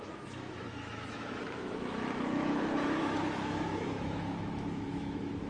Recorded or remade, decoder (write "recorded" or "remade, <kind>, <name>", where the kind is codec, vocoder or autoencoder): remade, autoencoder, DAC-VAE